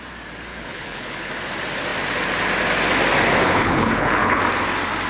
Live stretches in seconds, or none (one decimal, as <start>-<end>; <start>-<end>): 0.0-0.5; 1.3-3.4; 4.4-5.1